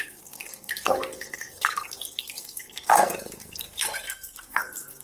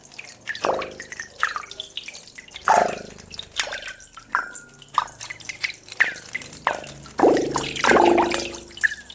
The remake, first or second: first